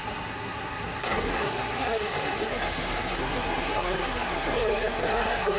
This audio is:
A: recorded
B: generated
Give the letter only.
B